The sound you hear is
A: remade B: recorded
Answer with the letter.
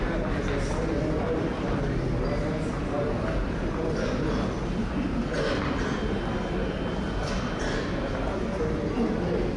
B